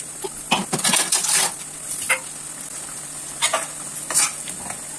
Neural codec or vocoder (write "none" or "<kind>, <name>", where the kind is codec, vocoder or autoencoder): none